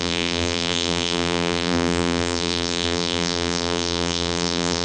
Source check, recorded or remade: remade